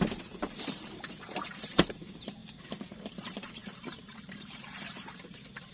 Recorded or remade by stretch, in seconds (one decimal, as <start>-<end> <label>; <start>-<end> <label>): 0.0-2.4 remade; 2.4-3.0 recorded; 3.0-5.7 remade